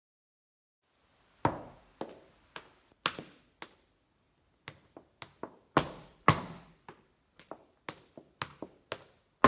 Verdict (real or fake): real